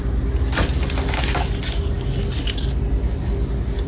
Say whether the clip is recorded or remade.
recorded